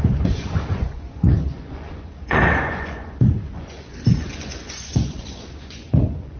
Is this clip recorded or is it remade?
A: remade